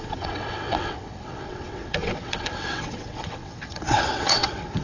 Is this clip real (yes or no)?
no